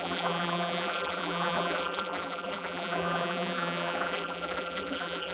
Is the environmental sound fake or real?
fake